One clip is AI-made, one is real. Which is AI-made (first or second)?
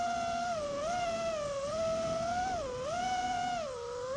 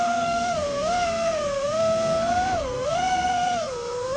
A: second